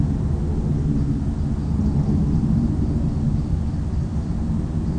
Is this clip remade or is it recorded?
recorded